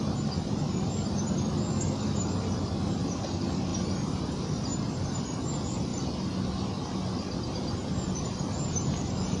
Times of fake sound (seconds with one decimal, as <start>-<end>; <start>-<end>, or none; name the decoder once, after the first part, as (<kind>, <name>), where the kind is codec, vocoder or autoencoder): 3.7-4.2 (vocoder, BigVGAN v2)